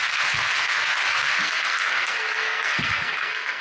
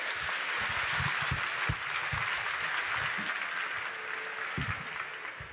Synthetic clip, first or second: first